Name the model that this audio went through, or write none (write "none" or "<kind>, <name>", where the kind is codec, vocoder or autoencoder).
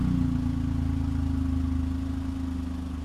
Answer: none